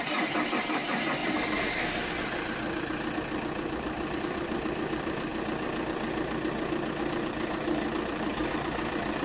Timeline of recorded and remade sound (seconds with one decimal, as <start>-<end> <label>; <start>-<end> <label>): 0.0-1.2 remade; 1.2-4.2 recorded; 4.2-5.3 remade; 5.3-7.0 recorded; 7.0-9.2 remade